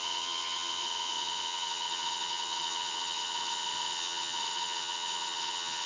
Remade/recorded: remade